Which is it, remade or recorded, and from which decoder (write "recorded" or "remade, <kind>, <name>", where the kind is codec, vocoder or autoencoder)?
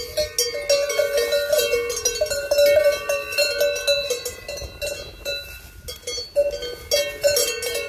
recorded